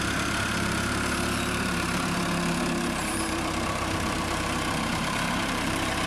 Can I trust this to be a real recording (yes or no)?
no